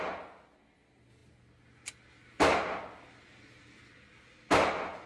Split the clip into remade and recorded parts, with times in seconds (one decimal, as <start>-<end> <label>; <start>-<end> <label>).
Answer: 0.0-5.1 recorded